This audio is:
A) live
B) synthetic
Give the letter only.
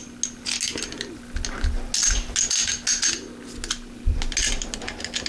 A